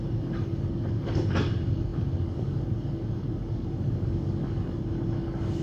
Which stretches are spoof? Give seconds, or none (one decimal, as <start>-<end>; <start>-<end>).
0.0-5.6